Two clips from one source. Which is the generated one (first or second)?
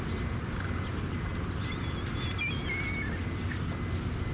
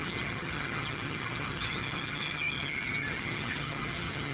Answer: second